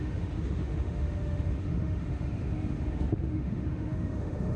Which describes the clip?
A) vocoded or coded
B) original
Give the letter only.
A